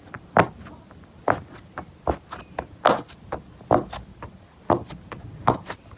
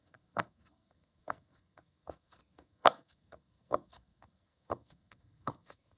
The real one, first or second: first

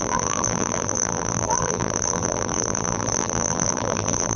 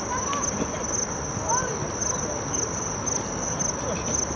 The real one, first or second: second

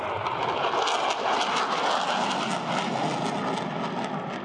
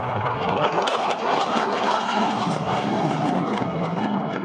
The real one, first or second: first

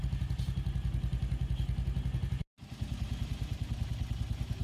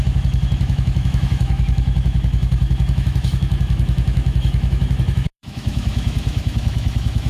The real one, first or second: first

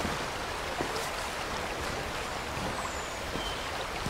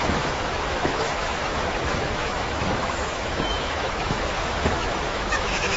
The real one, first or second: first